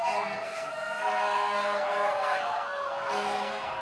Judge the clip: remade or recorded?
remade